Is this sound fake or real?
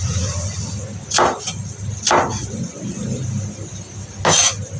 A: real